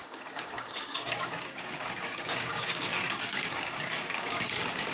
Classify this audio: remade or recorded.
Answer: remade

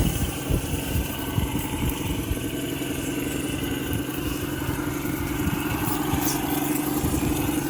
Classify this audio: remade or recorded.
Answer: remade